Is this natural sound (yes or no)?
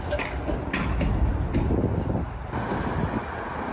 yes